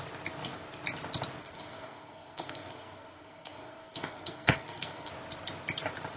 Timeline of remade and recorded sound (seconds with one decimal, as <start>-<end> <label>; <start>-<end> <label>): 0.0-1.4 recorded; 1.4-5.1 remade; 5.1-6.2 recorded